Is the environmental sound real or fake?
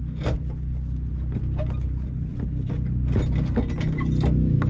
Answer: real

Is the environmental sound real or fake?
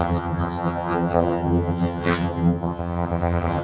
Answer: fake